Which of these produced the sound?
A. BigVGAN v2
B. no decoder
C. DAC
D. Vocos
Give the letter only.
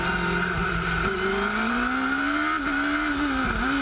B